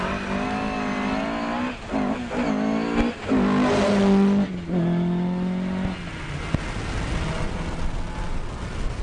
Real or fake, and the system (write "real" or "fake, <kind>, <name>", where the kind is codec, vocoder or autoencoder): real